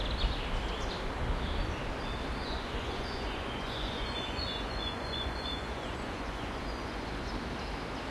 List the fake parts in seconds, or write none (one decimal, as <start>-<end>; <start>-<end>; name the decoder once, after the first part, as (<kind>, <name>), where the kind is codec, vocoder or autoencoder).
2.4-7.3 (vocoder, Vocos)